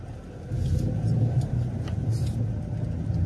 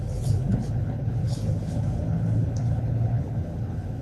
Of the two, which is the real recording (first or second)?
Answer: first